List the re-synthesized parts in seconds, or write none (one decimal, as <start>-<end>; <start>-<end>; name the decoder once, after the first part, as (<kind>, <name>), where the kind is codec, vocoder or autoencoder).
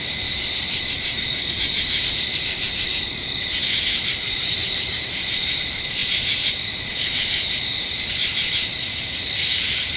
0.0-2.9 (vocoder, BigVGAN v2); 4.2-10.0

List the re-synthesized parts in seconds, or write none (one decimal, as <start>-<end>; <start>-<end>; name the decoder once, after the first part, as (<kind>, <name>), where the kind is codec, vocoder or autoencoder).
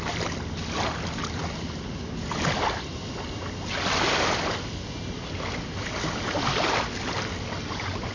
none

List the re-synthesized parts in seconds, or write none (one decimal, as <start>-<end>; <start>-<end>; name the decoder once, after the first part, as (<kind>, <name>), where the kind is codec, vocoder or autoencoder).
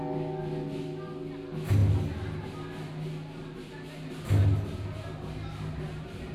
none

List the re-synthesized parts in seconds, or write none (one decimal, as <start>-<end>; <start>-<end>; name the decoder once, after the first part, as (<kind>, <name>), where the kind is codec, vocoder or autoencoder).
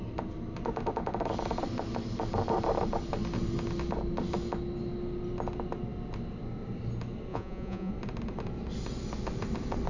7.3-7.9 (vocoder, Vocos)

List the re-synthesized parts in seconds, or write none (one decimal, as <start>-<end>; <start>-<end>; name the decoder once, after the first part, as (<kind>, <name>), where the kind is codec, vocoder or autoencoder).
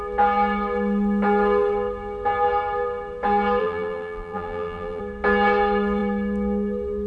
3.6-5.0 (vocoder, BigVGAN v2)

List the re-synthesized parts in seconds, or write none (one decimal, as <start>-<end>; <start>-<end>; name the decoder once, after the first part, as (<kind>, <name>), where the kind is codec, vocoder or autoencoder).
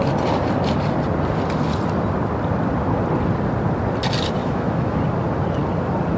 4.4-5.0 (autoencoder, DAC-VAE)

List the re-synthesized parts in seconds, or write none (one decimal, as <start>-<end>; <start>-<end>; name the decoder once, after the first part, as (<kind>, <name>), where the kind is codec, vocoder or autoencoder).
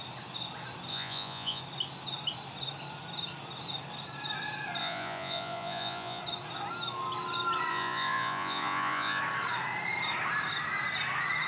0.9-1.6 (vocoder, Vocos); 4.8-6.2; 7.7-9.2